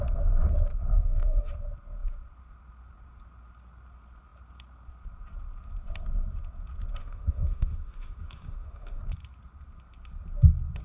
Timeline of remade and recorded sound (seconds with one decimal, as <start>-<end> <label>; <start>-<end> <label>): 0.0-0.9 recorded; 0.9-1.5 remade; 1.5-7.0 recorded; 7.0-9.0 remade; 9.0-10.8 recorded